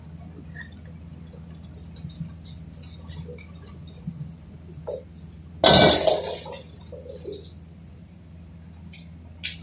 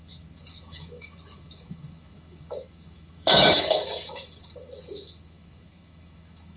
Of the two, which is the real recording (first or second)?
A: first